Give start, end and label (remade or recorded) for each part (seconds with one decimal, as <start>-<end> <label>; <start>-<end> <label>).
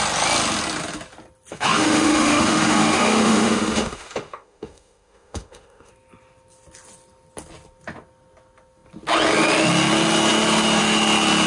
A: 0.0-1.5 recorded; 1.5-5.9 remade; 5.9-11.5 recorded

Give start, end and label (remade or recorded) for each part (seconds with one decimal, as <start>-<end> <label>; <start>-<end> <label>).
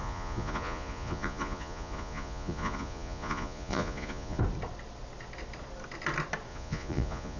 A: 0.0-4.4 remade; 4.4-6.5 recorded; 6.5-7.4 remade